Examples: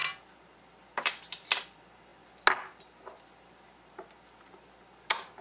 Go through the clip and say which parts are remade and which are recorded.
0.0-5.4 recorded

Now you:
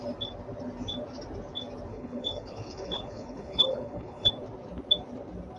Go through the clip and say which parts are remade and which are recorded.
0.0-1.9 recorded; 1.9-4.3 remade; 4.3-5.6 recorded

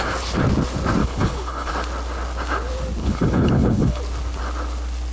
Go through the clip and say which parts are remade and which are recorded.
0.0-1.0 recorded; 1.0-1.7 remade; 1.7-3.0 recorded; 3.0-4.0 remade; 4.0-5.1 recorded

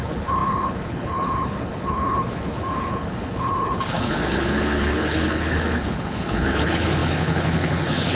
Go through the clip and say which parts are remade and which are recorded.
0.0-8.1 remade

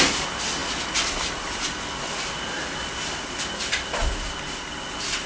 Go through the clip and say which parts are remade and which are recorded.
0.0-5.3 recorded

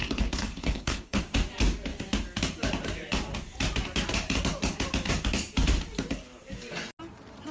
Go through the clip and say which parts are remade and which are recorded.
0.0-1.2 remade; 1.2-7.5 recorded

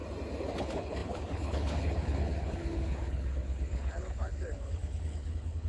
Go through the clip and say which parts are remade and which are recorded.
0.0-0.6 recorded; 0.6-5.7 remade